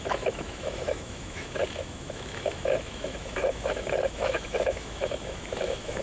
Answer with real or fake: fake